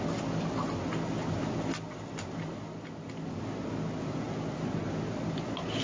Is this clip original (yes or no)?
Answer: yes